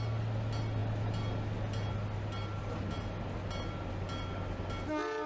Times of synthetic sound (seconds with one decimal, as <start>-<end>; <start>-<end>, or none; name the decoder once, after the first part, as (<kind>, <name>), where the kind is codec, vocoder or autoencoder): none